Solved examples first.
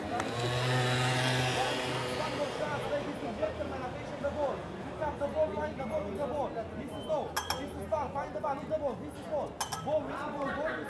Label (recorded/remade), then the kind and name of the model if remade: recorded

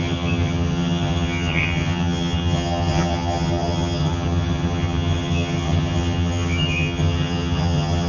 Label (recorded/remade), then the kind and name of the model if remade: remade, vocoder, HiFi-GAN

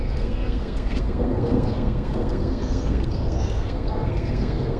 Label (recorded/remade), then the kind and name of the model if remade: remade, codec, SNAC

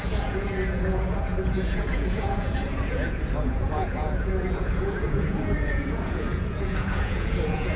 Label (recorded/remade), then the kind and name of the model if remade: remade, vocoder, Vocos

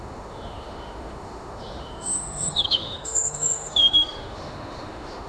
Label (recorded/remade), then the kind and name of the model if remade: remade, autoencoder, DAC-VAE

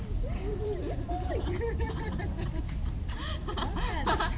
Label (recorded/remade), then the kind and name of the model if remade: remade, vocoder, BigVGAN v2